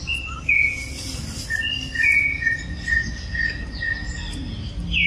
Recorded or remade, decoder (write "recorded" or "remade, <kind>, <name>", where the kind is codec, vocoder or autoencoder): recorded